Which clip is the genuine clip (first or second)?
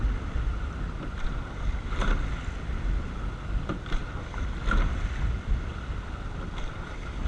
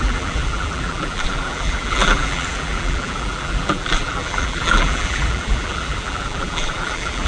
first